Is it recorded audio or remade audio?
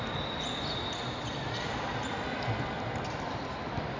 recorded